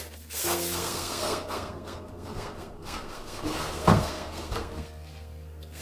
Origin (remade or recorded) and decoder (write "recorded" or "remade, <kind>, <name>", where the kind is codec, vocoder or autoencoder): remade, codec, SNAC